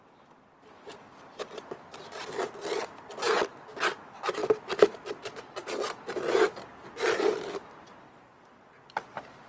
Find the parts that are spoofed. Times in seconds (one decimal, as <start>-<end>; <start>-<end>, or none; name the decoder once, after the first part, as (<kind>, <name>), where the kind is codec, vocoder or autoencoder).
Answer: 0.9-2.8 (vocoder, BigVGAN v2); 4.4-5.4